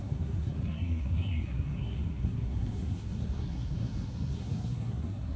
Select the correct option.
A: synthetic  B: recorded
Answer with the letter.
A